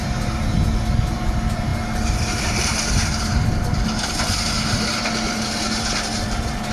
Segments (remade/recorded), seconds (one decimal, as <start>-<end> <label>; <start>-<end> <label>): 0.0-6.7 remade